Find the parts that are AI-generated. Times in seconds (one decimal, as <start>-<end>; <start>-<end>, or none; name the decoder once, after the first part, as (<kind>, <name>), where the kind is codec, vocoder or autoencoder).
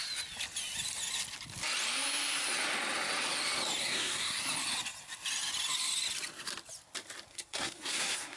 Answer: 3.8-4.4 (codec, SNAC); 7.3-8.4